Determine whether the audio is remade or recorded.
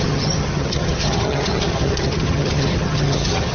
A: remade